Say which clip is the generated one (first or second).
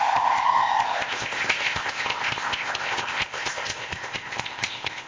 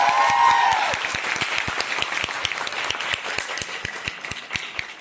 first